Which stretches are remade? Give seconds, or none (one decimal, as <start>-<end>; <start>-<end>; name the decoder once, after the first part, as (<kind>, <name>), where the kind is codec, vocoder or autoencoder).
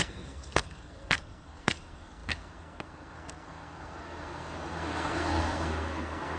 0.0-6.4 (codec, SNAC)